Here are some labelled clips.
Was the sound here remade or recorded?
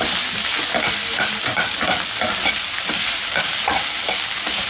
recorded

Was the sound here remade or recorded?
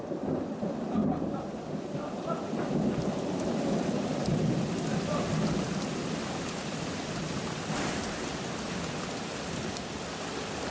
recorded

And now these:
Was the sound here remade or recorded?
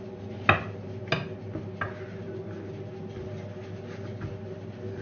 recorded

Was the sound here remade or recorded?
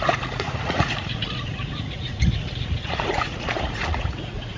remade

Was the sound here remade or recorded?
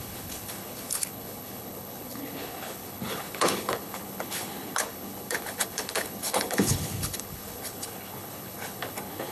remade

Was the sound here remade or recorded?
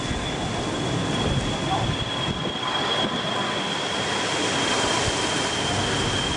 recorded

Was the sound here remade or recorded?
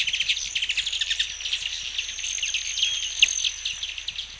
recorded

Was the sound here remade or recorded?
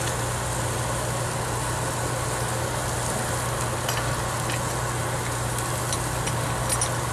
recorded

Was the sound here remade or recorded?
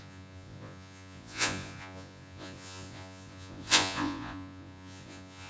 remade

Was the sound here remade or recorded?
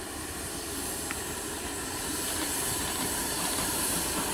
remade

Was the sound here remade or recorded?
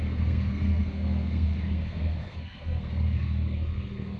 remade